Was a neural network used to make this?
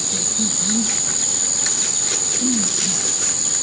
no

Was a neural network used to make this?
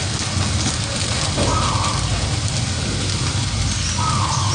no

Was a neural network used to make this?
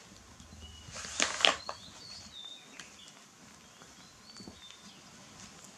no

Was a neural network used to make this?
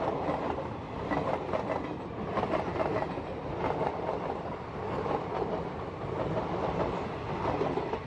no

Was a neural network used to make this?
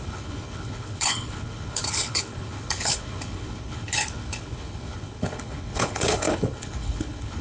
yes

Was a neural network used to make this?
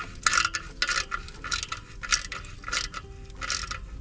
no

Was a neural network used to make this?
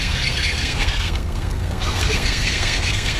yes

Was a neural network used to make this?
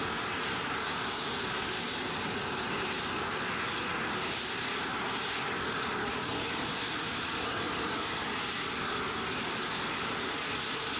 no